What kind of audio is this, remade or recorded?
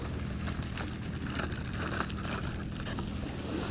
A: recorded